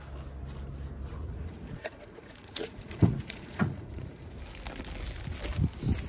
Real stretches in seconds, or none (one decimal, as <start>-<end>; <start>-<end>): 0.0-1.1; 4.4-6.1